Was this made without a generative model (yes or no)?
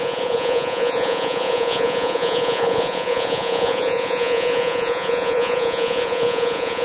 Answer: no